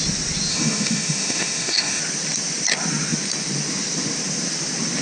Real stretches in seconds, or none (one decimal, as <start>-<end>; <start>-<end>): 0.0-0.5; 2.0-5.0